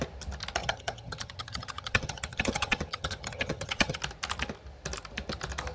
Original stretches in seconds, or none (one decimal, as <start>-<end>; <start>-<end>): 0.0-0.6; 4.0-5.7